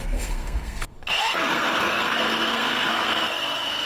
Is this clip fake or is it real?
fake